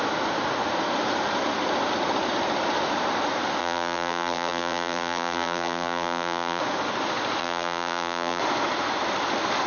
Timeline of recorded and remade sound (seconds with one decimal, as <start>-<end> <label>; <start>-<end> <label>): 0.0-3.6 recorded; 3.6-6.6 remade; 6.6-7.4 recorded; 7.4-8.4 remade; 8.4-9.7 recorded